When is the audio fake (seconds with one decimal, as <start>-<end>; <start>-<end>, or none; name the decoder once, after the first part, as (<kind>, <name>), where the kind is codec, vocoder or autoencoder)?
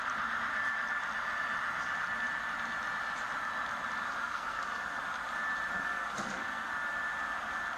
4.2-5.0 (codec, SNAC); 5.7-6.7